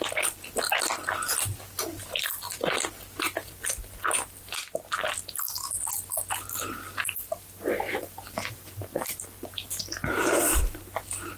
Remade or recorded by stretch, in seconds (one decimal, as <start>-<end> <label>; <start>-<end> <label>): 0.0-11.4 recorded